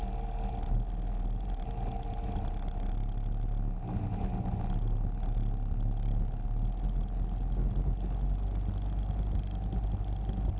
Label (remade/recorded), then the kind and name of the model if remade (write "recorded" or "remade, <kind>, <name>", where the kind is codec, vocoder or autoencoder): recorded